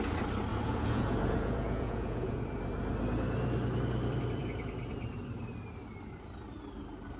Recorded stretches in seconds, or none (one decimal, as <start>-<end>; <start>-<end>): 0.0-0.5; 2.4-7.2

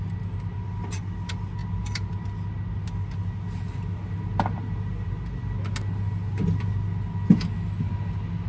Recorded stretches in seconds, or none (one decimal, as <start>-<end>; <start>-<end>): 0.0-8.5

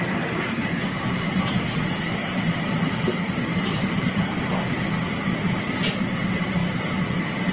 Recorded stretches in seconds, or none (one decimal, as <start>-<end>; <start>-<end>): 0.0-2.2; 2.9-3.5; 4.9-6.6

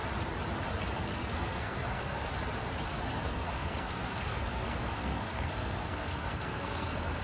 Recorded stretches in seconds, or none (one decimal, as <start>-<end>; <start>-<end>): 0.0-1.0; 2.3-2.9

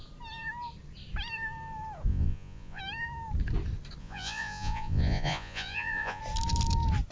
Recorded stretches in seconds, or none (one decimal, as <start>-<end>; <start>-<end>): 0.0-2.1; 2.8-4.0; 6.2-7.1

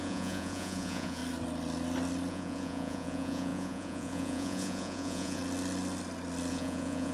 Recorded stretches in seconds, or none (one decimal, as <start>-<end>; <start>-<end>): 1.2-2.3; 5.4-6.5